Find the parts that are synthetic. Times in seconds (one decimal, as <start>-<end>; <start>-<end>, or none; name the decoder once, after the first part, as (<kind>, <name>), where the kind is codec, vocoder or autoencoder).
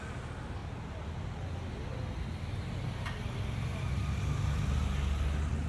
none